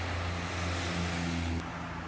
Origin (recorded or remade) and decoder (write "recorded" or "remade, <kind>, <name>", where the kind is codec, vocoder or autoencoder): recorded